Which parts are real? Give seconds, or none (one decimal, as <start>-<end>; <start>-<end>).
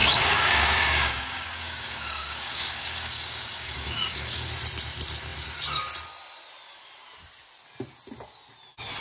4.5-9.0